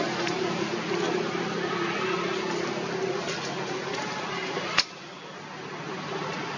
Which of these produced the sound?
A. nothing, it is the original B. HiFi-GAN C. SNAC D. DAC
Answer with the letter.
A